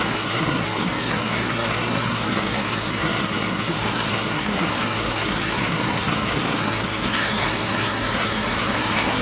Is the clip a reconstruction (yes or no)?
yes